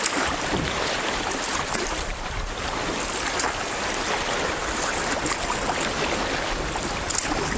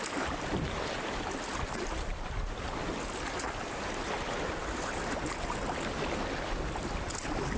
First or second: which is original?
second